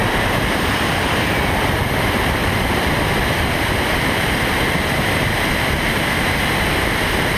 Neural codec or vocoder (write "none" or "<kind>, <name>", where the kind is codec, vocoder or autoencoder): vocoder, BigVGAN v2